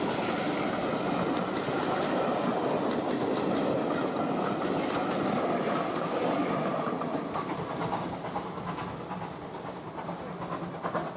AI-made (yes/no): no